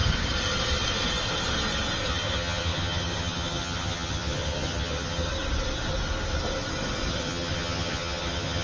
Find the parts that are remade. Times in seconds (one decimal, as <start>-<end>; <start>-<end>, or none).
2.1-5.3; 7.1-8.6